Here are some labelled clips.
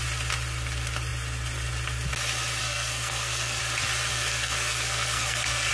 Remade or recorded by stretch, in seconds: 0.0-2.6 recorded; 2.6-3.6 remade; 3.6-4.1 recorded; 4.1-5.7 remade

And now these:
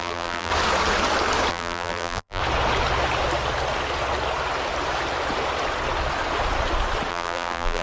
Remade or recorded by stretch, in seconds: 0.0-0.5 remade; 0.5-1.5 recorded; 1.5-2.4 remade; 2.4-7.1 recorded; 7.1-7.8 remade

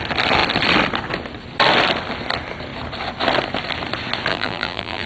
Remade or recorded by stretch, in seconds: 0.0-4.3 recorded; 4.3-5.1 remade